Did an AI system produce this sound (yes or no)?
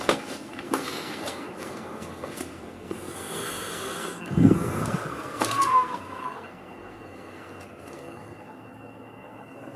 yes